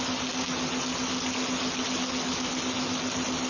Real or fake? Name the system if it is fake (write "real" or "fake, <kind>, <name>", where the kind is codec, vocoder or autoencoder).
real